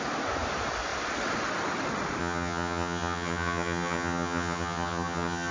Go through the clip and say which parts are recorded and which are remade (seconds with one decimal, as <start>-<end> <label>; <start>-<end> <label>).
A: 0.0-2.2 recorded; 2.2-5.5 remade